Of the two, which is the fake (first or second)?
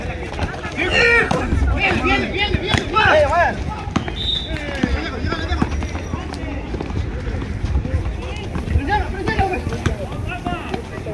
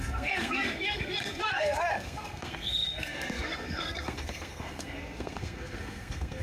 second